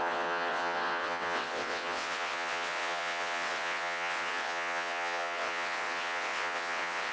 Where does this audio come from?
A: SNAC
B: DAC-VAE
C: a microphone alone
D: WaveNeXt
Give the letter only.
D